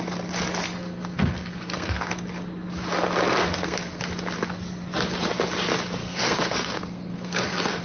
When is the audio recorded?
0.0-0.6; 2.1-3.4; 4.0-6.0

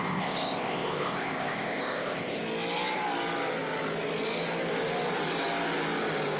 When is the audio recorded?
2.4-6.4

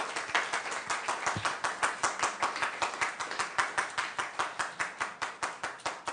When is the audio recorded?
0.0-6.1

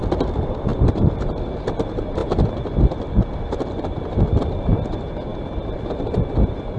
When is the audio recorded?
0.0-0.7; 1.3-6.8

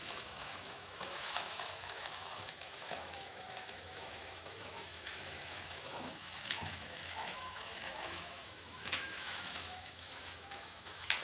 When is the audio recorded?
none

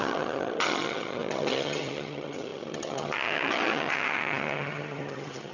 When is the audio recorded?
none